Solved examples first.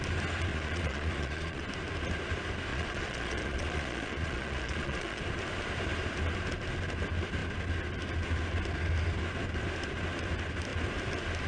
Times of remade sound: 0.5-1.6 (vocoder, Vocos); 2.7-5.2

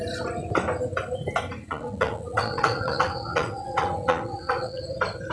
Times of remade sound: 1.6-4.8 (vocoder, WaveNeXt)

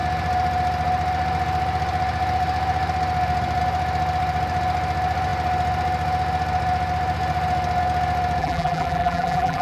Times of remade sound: 8.4-9.6 (vocoder, BigVGAN v2)

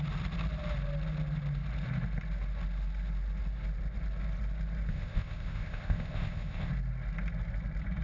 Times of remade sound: 4.9-6.7 (codec, ZipCodec)

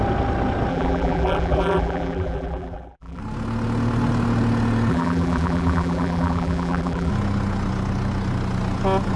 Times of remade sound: 0.7-3.2 (vocoder, BigVGAN v2); 4.9-7.1

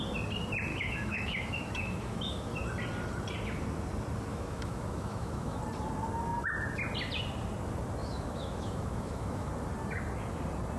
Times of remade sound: 0.7-2.5 (autoencoder, DAC-VAE); 4.3-5.6; 8.0-9.5

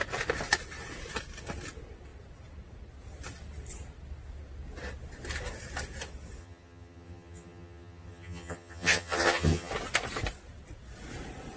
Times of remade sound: 6.4-9.7 (vocoder, HiFi-GAN)